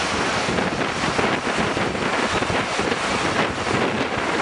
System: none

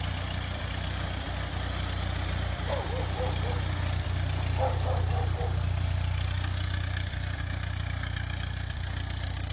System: none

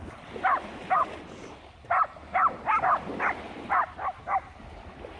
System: none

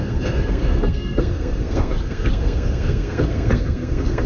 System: codec, SNAC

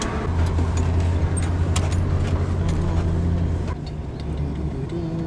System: none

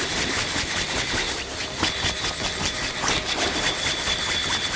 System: none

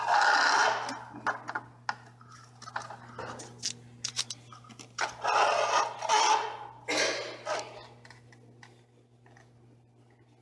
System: none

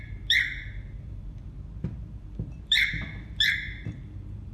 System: vocoder, BigVGAN v2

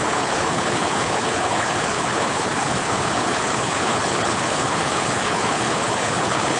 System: codec, HILCodec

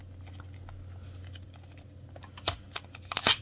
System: none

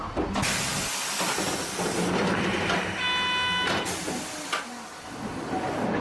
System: none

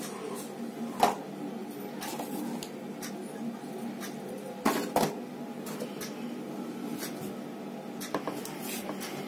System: none